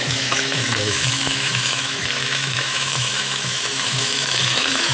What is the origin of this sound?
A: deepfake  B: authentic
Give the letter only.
A